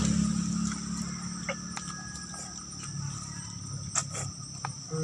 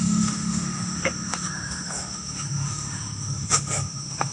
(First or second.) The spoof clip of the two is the second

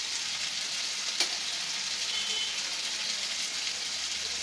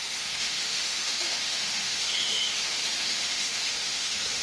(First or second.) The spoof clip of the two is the second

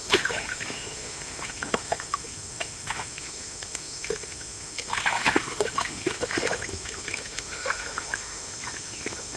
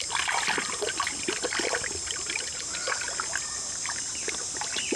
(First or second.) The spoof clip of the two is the first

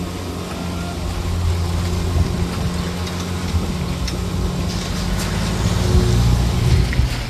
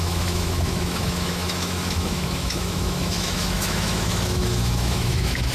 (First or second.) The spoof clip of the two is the second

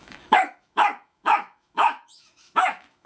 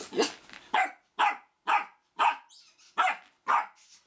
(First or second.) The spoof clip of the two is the first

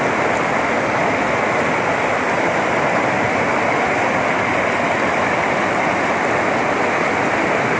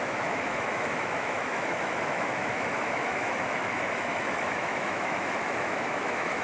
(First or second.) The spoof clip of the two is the second